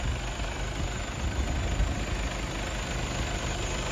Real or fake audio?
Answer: real